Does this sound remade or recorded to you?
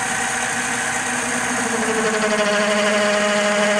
recorded